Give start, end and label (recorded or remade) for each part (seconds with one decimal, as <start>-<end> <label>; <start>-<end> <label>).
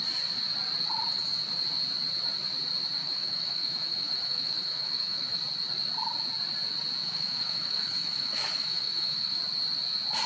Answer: 0.0-3.0 recorded; 3.0-5.4 remade; 5.4-7.0 recorded; 7.0-9.4 remade; 9.4-10.3 recorded